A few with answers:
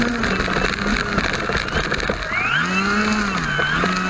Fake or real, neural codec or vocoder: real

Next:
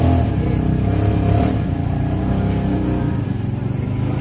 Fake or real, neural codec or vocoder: real